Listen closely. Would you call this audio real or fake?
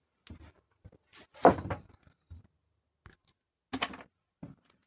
real